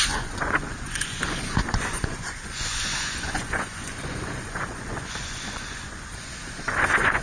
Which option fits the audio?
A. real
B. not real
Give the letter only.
B